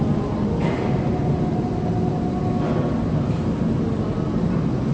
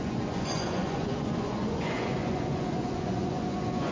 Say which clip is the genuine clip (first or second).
first